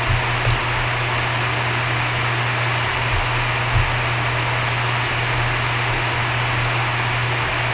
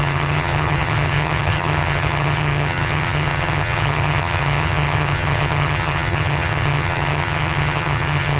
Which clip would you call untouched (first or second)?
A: first